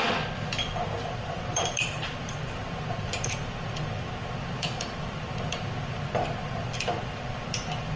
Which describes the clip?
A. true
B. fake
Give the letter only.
B